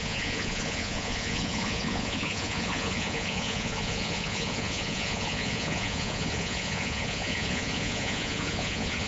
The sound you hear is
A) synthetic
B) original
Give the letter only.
A